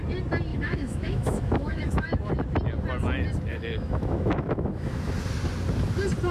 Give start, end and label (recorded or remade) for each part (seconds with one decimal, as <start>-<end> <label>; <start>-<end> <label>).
0.0-0.5 recorded; 0.5-2.3 remade; 2.3-3.5 recorded; 3.5-5.1 remade; 5.1-6.3 recorded